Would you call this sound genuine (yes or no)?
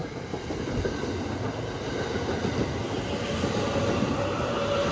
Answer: yes